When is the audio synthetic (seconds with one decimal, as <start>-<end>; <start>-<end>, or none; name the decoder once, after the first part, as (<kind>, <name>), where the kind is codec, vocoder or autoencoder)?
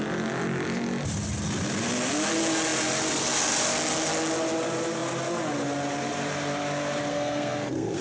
7.1-8.0 (codec, SNAC)